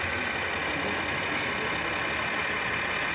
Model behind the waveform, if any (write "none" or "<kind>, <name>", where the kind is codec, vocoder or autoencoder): none